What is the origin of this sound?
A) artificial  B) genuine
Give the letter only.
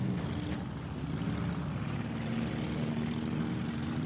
B